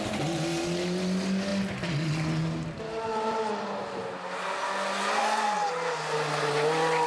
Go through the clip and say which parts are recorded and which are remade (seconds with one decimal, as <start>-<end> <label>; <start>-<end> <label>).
0.0-7.1 recorded